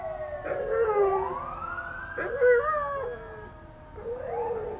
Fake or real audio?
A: real